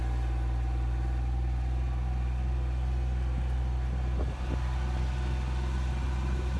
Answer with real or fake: real